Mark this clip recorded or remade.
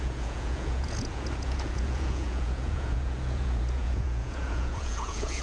remade